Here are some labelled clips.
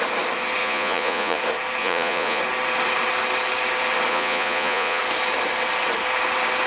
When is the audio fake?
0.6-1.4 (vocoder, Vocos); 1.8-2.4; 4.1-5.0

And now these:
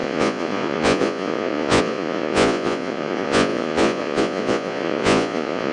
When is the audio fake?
0.0-5.7 (vocoder, Vocos)

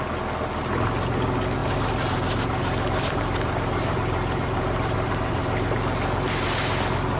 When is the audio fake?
1.6-5.8 (vocoder, BigVGAN v2)

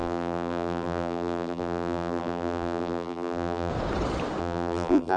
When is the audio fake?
0.0-3.7 (vocoder, BigVGAN v2); 4.4-5.2

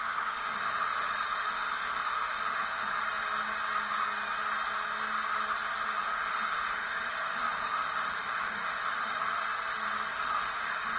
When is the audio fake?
0.0-3.0 (autoencoder, DAC-VAE); 6.0-9.4; 10.1-11.0

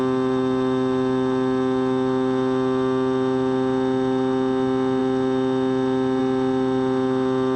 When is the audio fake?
none

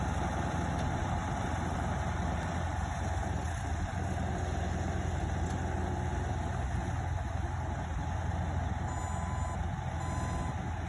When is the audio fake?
1.0-4.3 (vocoder, BigVGAN v2)